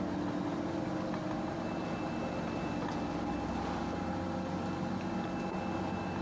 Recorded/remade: recorded